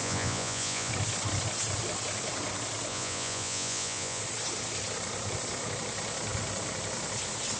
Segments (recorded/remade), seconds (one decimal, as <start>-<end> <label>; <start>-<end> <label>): 0.0-0.9 remade; 0.9-2.9 recorded; 2.9-4.2 remade; 4.2-7.6 recorded